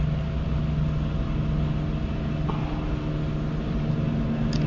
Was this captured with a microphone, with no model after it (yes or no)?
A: yes